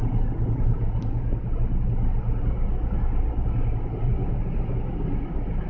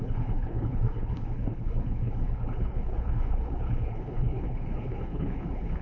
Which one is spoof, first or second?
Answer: second